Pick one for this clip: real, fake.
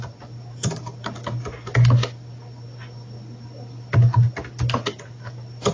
real